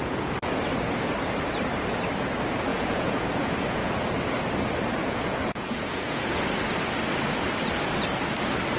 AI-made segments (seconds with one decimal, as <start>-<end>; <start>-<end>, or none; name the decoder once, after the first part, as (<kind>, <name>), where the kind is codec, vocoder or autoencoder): 0.0-0.6 (vocoder, Vocos); 2.7-3.9; 5.0-6.4